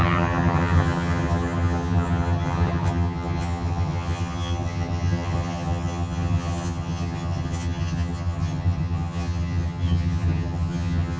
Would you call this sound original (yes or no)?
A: no